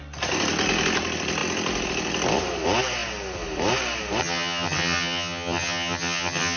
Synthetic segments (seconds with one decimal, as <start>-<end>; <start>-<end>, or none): 4.2-6.6